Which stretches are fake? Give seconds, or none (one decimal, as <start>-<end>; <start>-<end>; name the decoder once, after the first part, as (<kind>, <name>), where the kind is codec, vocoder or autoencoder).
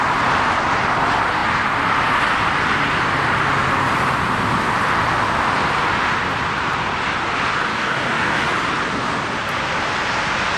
7.7-8.5 (codec, DAC)